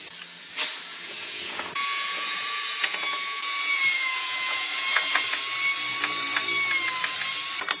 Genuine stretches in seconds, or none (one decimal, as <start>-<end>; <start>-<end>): 0.0-0.9; 5.4-7.8